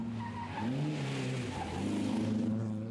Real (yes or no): yes